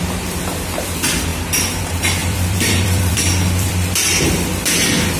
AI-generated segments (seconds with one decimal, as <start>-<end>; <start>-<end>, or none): 2.2-4.7